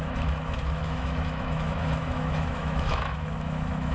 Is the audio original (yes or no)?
no